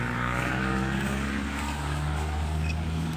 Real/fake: fake